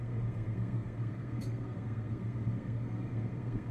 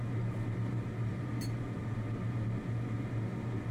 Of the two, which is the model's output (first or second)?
first